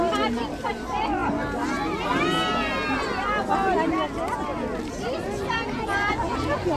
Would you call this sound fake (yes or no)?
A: no